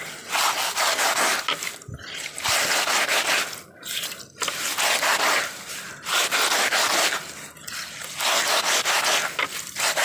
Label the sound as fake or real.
real